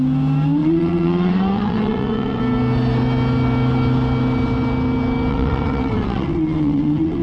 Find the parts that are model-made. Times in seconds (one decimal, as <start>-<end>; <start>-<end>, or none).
0.6-2.4; 5.3-7.2